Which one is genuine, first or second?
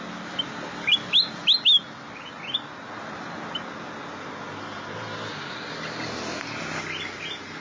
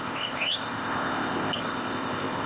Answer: first